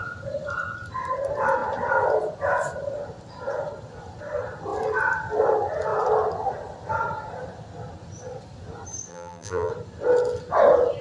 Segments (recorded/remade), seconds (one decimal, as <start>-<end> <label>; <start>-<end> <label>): 0.0-9.1 recorded; 9.1-9.7 remade; 9.7-11.0 recorded